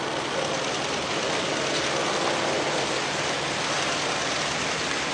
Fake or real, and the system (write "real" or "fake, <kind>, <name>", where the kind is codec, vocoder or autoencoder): real